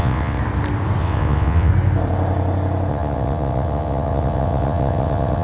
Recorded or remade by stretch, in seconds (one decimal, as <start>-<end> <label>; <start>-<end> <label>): 0.0-0.4 remade; 0.4-1.0 recorded; 1.0-1.7 remade; 1.7-2.9 recorded; 2.9-5.4 remade